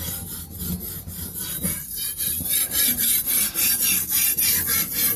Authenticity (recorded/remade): recorded